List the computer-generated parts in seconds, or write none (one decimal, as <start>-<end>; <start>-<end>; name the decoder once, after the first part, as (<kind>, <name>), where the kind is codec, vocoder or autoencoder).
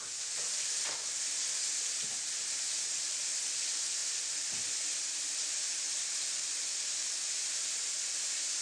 none